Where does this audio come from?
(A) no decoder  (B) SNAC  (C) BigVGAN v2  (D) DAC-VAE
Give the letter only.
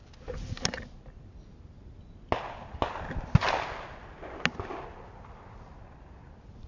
A